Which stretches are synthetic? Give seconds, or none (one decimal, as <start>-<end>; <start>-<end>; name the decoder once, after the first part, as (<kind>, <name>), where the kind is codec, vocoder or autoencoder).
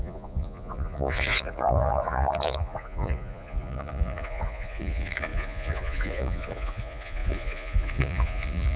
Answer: 0.0-8.8 (vocoder, Vocos)